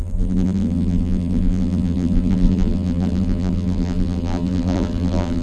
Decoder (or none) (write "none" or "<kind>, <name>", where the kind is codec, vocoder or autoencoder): vocoder, BigVGAN v2